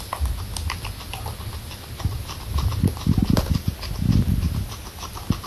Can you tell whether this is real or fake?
real